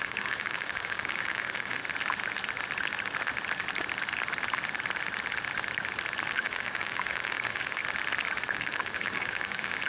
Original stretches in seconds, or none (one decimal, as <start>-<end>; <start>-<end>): 1.8-6.3; 7.8-8.5